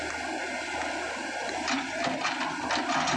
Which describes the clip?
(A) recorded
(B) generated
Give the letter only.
A